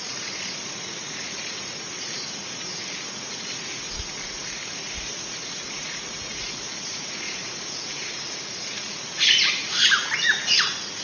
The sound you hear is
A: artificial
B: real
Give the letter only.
A